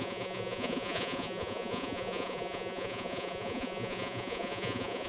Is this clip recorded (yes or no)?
no